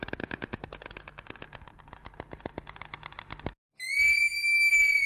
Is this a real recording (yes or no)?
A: yes